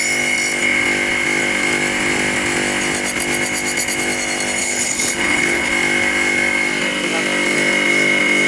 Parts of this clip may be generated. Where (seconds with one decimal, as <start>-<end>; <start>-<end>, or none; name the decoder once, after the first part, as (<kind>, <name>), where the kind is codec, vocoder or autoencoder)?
4.6-5.7 (codec, HILCodec)